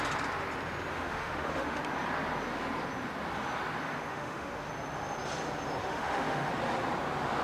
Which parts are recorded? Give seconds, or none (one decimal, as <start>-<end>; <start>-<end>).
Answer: 0.0-0.9; 1.8-4.1; 4.7-5.8; 6.5-7.4